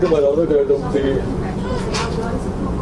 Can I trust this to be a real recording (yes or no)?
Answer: no